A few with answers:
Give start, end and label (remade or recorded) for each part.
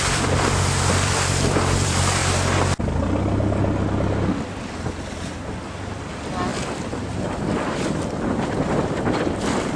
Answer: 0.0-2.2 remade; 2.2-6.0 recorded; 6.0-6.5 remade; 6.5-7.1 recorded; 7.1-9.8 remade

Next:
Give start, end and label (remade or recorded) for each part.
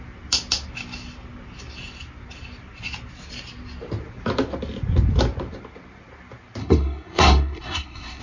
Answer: 0.0-6.6 recorded; 6.6-8.2 remade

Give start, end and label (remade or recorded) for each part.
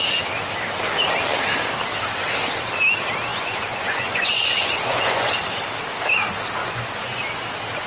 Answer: 0.0-3.3 recorded; 3.3-5.4 remade; 5.4-6.6 recorded; 6.6-7.2 remade; 7.2-7.9 recorded